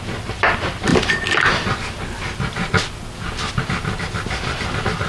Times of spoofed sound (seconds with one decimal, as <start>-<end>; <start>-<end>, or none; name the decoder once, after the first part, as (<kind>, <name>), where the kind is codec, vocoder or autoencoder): none